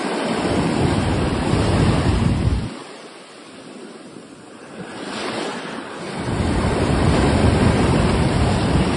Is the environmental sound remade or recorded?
remade